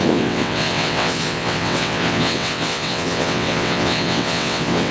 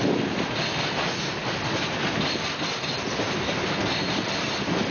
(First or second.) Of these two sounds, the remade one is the first